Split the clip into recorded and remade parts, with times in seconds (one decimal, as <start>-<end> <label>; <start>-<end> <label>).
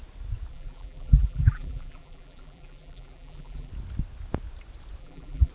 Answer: 0.0-0.5 recorded; 0.5-3.7 remade; 3.7-5.0 recorded; 5.0-5.5 remade